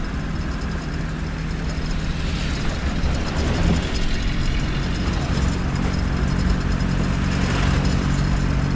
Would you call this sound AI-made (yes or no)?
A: no